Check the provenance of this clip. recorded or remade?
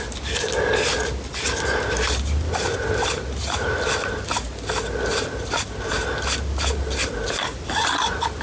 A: recorded